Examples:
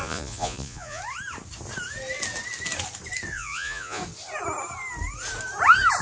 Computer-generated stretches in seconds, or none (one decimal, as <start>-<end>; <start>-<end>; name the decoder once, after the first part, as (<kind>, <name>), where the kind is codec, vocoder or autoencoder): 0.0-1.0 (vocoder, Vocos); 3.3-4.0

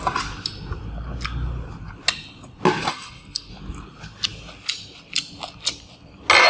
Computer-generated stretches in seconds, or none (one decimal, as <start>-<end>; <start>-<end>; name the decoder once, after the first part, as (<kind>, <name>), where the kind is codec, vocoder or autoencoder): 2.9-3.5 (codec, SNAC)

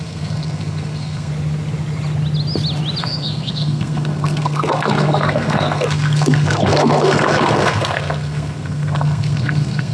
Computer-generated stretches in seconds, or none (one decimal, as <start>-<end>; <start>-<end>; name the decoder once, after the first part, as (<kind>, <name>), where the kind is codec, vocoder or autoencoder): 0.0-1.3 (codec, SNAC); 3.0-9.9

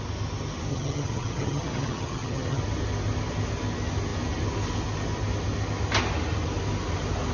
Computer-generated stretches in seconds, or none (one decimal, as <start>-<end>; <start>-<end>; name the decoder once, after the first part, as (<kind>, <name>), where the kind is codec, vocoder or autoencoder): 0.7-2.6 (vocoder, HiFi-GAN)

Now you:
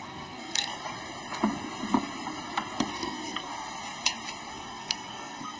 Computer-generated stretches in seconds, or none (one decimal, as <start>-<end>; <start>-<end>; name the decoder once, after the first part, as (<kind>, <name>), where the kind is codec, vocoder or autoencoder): 0.0-0.7 (codec, SNAC); 2.9-3.5; 4.5-5.6

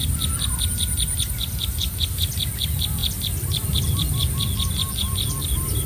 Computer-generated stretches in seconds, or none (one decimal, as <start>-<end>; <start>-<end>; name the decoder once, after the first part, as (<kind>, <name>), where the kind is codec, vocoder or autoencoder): none